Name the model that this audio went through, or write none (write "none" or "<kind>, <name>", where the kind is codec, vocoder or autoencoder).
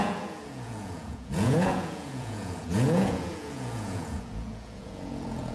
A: vocoder, Vocos